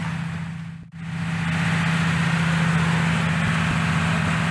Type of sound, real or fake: real